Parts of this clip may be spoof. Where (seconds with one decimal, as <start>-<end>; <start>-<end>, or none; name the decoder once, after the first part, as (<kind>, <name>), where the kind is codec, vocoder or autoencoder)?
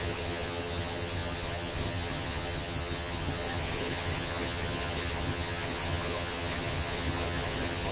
0.0-7.9 (vocoder, HiFi-GAN)